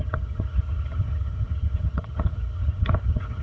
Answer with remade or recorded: remade